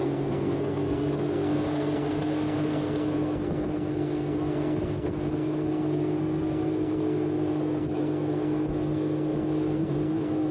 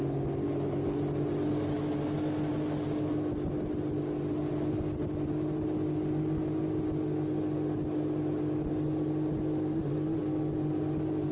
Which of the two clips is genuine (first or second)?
second